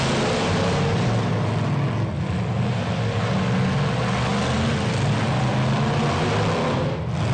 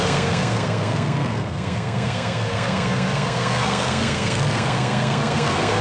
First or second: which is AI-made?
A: second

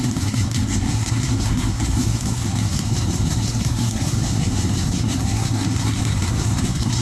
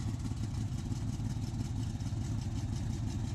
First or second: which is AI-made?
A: first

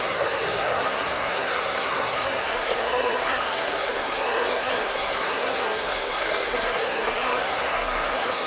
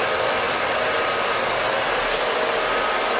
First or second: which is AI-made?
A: first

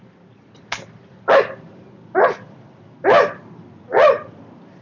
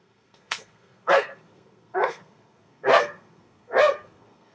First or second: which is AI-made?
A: second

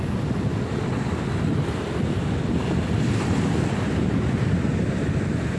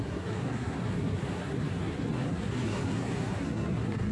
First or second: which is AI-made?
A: second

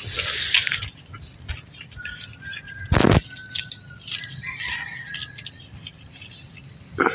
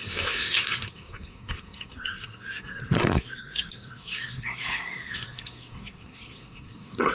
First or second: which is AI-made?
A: second